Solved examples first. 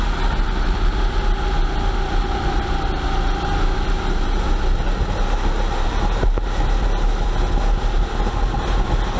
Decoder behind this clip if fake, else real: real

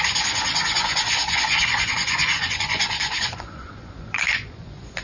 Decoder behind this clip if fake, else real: fake, vocoder, Vocos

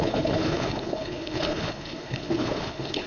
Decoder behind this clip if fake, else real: fake, codec, HILCodec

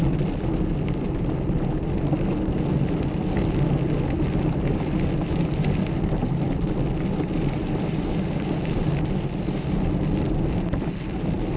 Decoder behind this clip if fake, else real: real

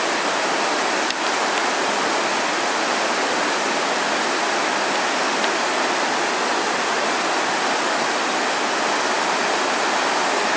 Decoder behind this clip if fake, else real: real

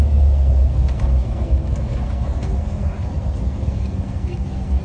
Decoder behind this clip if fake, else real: fake, codec, SNAC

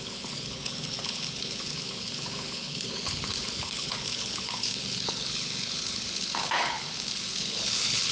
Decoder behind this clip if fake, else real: fake, codec, HILCodec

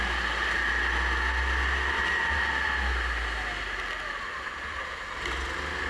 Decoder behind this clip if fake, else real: real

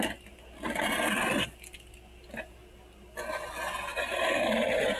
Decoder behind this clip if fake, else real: real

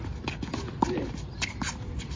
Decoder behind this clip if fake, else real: real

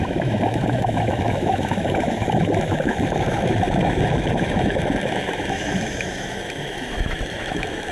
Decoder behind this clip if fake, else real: fake, autoencoder, DAC-VAE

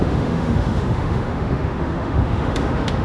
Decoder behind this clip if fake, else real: fake, autoencoder, DAC-VAE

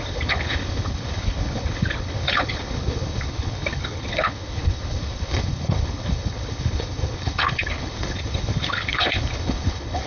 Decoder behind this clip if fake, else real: fake, codec, HILCodec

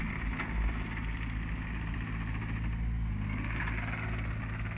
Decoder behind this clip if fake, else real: real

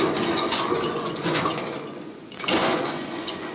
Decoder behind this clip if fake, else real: fake, vocoder, Vocos